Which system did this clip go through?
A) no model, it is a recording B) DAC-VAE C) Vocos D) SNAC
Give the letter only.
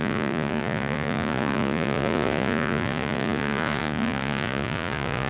C